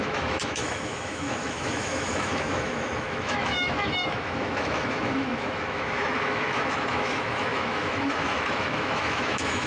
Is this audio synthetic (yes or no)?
yes